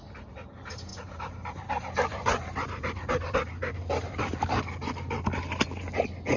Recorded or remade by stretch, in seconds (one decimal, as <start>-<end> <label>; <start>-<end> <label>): 0.0-0.9 recorded; 0.9-4.6 remade; 4.6-6.4 recorded